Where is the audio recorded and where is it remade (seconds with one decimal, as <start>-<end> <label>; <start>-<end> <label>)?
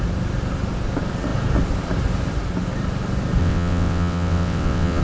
0.0-3.4 recorded; 3.4-5.0 remade